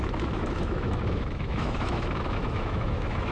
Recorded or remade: remade